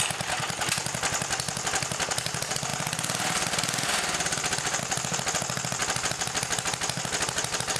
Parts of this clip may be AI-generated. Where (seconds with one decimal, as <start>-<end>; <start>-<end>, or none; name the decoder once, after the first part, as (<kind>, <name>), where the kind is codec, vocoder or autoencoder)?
none